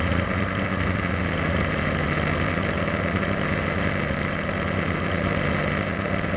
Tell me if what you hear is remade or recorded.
recorded